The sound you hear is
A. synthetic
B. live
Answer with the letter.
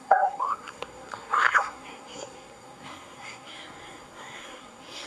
A